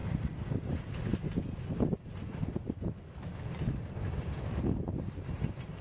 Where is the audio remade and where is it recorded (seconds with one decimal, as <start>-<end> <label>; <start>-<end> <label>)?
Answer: 0.0-4.5 recorded; 4.5-5.3 remade; 5.3-5.8 recorded